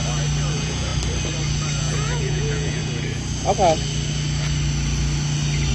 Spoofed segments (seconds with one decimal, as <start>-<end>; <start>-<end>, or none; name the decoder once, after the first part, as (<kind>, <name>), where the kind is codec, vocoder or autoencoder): 0.5-0.9 (vocoder, Vocos); 1.8-2.8

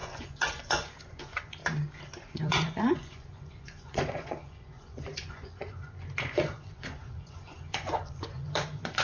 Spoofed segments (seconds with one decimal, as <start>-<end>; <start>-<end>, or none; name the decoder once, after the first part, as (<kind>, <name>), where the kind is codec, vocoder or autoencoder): 0.0-1.6 (vocoder, Vocos); 2.2-9.0

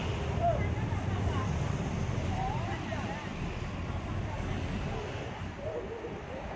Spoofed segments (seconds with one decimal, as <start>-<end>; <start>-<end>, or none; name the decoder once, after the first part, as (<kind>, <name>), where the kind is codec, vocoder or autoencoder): none

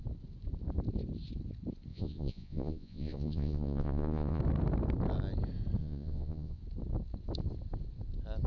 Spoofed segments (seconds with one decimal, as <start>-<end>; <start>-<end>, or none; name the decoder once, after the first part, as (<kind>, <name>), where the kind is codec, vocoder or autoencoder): 1.9-4.4 (vocoder, Vocos); 5.8-6.6

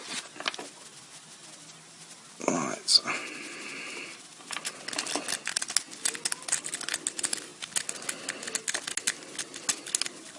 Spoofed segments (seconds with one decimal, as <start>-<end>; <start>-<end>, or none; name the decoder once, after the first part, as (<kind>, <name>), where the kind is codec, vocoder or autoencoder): none

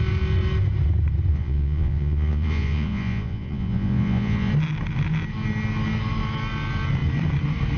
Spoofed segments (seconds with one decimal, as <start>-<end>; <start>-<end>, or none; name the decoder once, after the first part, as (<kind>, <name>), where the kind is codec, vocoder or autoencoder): 1.3-4.5 (vocoder, Vocos)

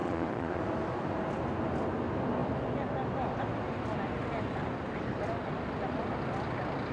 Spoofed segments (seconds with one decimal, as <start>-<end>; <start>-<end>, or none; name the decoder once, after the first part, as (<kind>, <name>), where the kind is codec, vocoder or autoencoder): 0.0-0.6 (vocoder, Vocos)